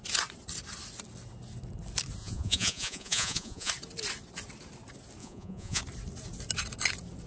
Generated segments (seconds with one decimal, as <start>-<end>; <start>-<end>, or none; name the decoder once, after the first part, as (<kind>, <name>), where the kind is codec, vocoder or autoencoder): 2.2-3.7 (vocoder, Vocos); 5.2-5.8